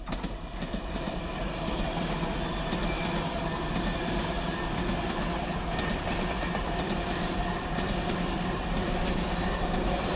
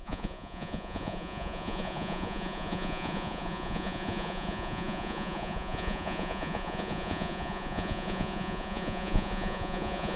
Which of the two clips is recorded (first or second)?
first